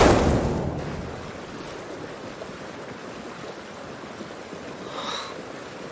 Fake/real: real